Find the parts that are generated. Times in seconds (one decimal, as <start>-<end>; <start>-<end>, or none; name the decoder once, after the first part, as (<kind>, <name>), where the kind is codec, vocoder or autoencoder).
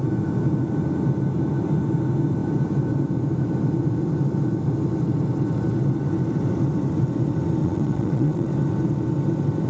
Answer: 7.6-8.5 (vocoder, Vocos)